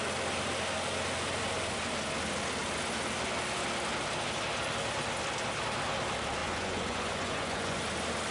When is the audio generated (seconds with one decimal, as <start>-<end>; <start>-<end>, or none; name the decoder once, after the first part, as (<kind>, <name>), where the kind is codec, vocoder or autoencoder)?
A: 6.4-7.8 (vocoder, Vocos)